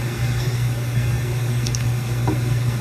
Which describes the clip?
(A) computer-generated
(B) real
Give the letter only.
A